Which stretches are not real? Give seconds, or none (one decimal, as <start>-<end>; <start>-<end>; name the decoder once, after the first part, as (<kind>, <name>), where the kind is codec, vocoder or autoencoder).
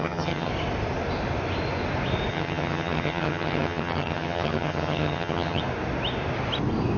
0.0-0.5 (vocoder, HiFi-GAN); 2.3-5.6